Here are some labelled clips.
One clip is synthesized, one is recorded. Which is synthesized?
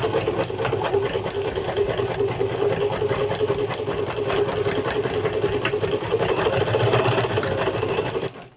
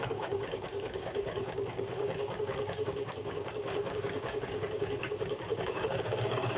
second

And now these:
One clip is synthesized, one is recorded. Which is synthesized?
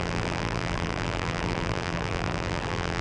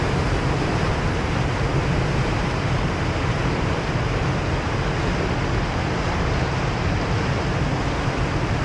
first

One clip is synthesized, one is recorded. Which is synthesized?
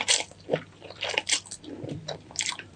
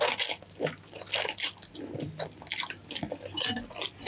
first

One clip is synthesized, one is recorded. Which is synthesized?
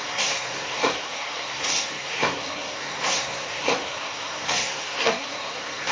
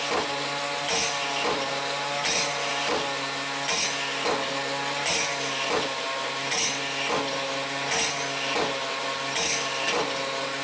first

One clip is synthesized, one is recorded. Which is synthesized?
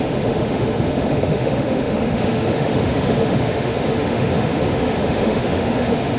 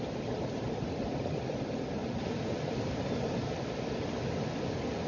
first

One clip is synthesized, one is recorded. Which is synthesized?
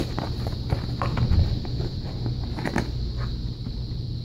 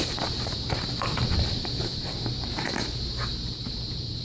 second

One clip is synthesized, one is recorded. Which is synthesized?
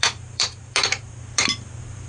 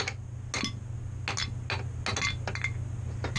first